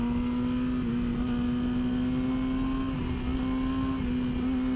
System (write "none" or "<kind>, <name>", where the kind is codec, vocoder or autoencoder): none